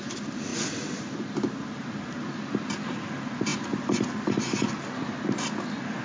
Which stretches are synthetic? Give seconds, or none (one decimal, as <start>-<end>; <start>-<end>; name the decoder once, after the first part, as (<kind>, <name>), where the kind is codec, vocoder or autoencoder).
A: none